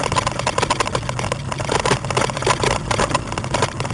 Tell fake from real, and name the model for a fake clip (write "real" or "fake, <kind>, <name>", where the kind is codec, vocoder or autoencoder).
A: real